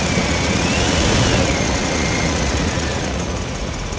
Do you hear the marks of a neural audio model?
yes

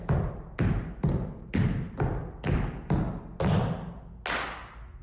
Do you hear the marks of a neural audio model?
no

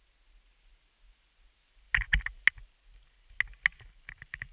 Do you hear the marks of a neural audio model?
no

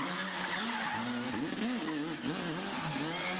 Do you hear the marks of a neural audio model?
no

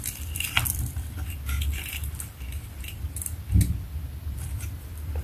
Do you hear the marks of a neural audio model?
no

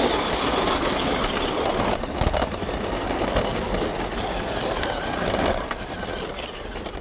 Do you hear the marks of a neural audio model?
no